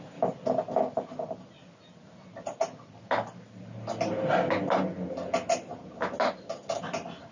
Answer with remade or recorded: recorded